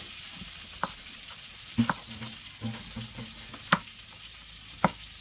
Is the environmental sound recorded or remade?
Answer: recorded